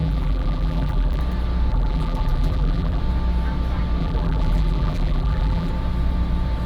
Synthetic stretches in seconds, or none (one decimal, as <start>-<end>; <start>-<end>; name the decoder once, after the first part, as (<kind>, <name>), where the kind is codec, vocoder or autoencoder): 0.0-1.2 (vocoder, BigVGAN v2); 1.7-3.0; 4.0-5.7